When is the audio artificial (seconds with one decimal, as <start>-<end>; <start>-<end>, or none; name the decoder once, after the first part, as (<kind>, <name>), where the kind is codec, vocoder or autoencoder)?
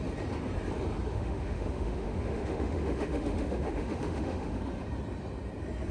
1.1-4.6 (autoencoder, DAC-VAE)